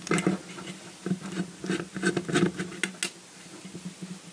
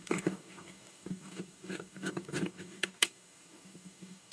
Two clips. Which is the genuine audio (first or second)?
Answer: first